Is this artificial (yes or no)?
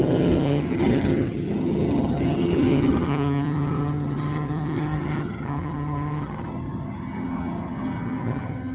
yes